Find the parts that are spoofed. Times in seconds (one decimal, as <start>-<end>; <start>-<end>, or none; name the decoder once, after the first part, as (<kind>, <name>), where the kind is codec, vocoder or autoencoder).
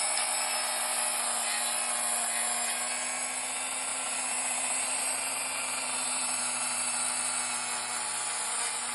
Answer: 3.9-7.0 (vocoder, BigVGAN v2)